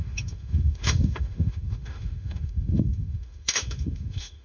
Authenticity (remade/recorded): remade